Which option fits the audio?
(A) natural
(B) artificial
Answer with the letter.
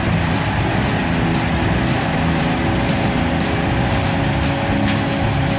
A